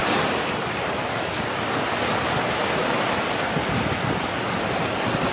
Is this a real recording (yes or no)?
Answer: yes